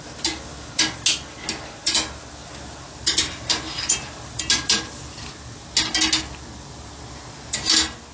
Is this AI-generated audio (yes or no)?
no